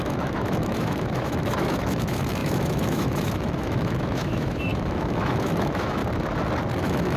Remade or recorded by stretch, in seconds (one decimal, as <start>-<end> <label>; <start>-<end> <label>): 0.0-6.0 remade; 6.0-6.8 recorded; 6.8-7.2 remade